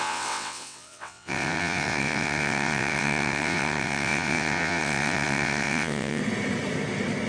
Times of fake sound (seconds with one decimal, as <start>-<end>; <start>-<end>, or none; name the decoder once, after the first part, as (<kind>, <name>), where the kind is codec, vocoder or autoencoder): 0.0-6.2 (vocoder, WaveNeXt)